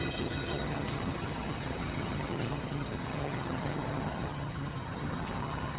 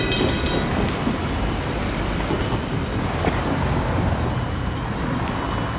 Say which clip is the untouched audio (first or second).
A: second